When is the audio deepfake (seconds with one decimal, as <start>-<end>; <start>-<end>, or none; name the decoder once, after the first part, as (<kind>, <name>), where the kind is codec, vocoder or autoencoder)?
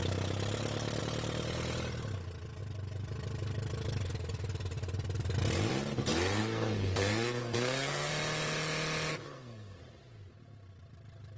6.4-8.1 (codec, SNAC); 9.1-9.8